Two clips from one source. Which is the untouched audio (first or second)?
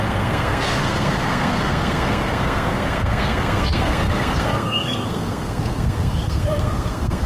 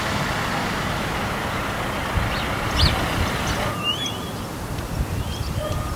second